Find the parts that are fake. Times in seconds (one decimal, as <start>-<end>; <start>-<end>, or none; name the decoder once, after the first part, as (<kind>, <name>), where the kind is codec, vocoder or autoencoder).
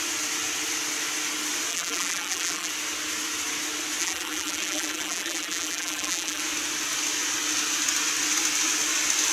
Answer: 1.7-2.7 (vocoder, BigVGAN v2); 4.0-6.4